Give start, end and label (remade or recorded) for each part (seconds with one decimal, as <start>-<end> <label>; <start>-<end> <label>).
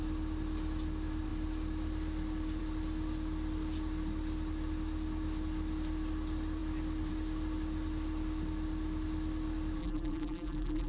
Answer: 0.0-9.8 recorded; 9.8-10.9 remade